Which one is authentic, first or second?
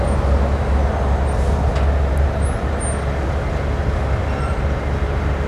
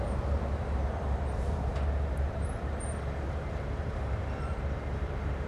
first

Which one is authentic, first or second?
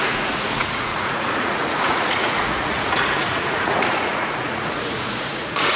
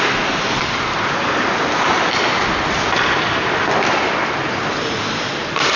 second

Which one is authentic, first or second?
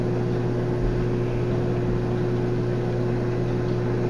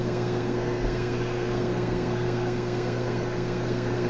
first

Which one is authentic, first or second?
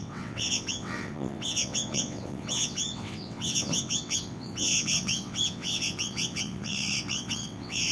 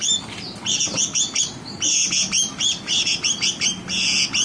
second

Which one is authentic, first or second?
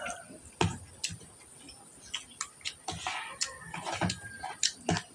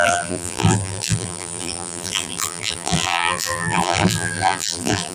first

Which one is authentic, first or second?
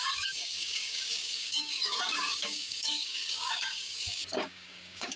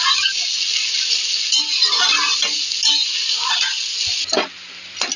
second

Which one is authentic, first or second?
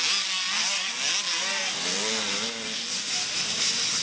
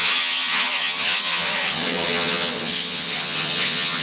first